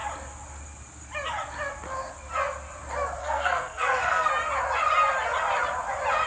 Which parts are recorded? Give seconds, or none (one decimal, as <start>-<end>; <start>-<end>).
0.0-3.2; 4.3-6.3